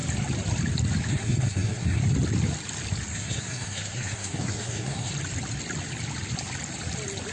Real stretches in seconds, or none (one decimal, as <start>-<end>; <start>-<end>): 0.0-1.1; 2.0-3.1; 5.1-7.3